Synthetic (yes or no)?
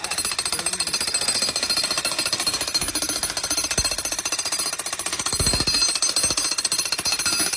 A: no